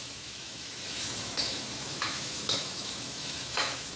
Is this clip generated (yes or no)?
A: yes